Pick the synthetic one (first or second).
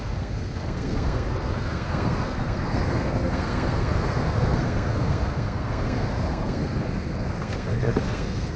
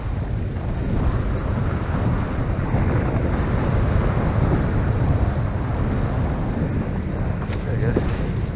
first